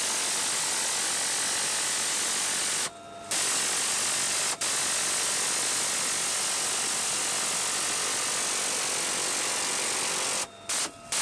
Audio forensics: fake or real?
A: real